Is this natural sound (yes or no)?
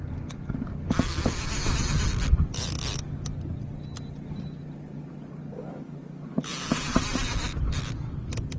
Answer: yes